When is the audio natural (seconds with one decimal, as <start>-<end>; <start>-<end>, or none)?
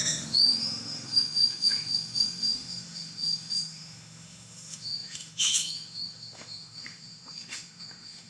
none